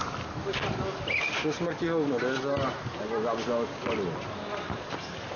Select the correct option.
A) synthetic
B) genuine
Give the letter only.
B